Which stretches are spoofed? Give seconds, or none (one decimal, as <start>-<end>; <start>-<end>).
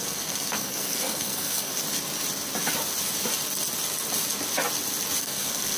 0.0-1.7; 5.2-5.8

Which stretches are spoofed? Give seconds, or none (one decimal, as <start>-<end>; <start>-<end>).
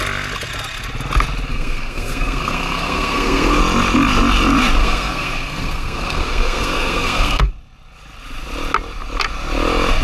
1.5-3.6; 4.8-7.5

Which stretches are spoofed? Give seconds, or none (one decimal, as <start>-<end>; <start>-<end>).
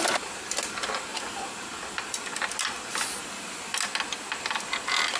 none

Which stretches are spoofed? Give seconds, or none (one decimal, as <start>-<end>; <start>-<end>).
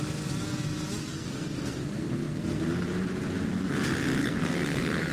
1.1-2.6; 4.2-5.1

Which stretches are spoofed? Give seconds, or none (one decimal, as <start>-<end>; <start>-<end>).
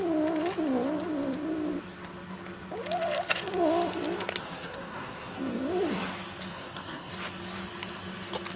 4.4-5.4; 6.5-7.1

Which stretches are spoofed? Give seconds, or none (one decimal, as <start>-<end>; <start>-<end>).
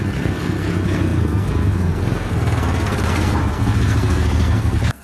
0.0-5.0